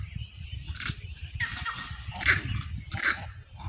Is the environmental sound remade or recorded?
recorded